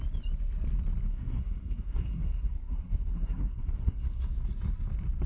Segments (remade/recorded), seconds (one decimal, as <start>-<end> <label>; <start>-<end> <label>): 0.0-1.1 recorded; 1.1-4.3 remade; 4.3-5.3 recorded